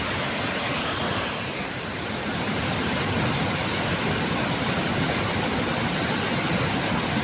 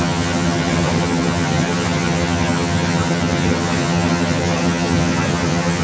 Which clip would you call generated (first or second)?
second